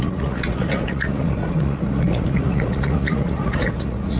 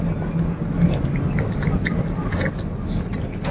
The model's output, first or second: first